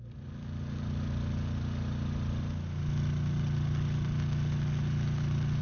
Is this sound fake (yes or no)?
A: no